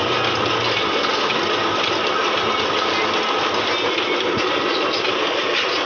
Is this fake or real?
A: real